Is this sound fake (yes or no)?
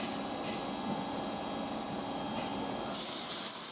no